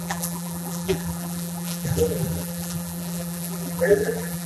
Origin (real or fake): fake